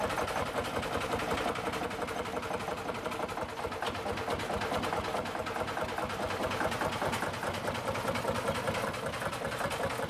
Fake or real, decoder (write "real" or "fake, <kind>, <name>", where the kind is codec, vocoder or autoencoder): real